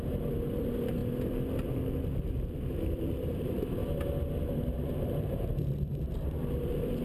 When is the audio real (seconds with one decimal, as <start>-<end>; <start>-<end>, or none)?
1.0-2.2; 3.8-4.5